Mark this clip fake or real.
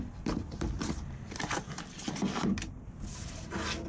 real